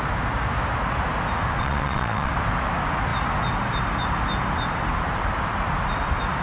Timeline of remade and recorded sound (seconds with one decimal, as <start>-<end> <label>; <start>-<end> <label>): 0.0-1.6 recorded; 1.6-2.3 remade; 2.3-6.4 recorded